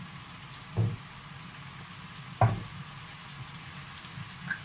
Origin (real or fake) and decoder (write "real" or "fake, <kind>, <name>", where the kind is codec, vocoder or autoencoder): real